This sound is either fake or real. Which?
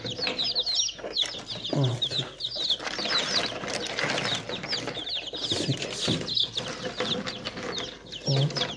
real